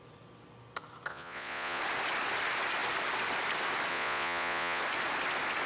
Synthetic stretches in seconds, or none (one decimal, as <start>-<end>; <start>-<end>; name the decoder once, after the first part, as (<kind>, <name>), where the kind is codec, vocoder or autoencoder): 1.1-1.8 (vocoder, Vocos); 3.9-4.8

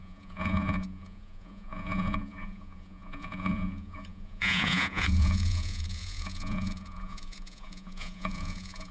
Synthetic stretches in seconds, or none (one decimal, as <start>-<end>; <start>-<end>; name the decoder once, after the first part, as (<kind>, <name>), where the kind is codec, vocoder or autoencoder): 0.0-8.9 (vocoder, Vocos)

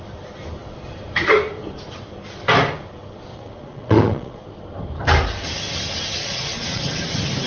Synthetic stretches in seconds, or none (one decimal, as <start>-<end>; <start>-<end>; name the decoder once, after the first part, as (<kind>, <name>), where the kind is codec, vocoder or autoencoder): 3.3-4.4 (vocoder, Vocos); 6.2-6.8